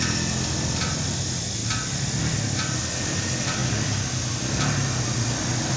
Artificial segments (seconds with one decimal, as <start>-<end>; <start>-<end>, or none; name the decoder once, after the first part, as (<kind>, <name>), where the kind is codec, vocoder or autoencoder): none